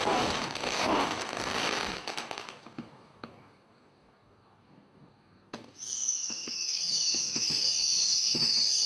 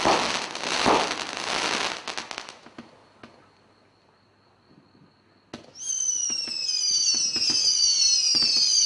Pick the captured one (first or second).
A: second